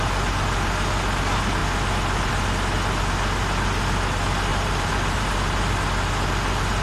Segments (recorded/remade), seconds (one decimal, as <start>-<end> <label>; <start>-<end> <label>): 0.0-4.5 recorded; 4.5-5.7 remade; 5.7-6.8 recorded

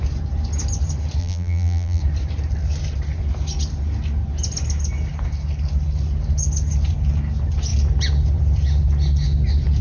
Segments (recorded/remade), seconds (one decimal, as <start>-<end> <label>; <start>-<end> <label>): 0.0-1.2 recorded; 1.2-2.0 remade; 2.0-9.8 recorded

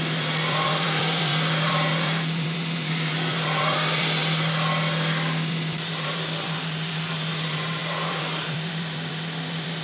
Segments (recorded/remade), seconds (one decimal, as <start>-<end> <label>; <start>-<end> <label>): 0.0-4.2 remade; 4.2-5.5 recorded; 5.5-9.8 remade